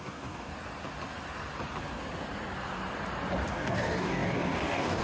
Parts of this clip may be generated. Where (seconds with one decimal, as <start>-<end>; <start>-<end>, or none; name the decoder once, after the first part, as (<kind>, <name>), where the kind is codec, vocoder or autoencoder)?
0.0-0.5 (codec, DAC); 3.5-5.0